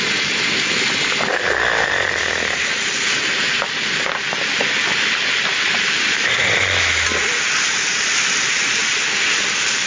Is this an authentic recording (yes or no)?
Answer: yes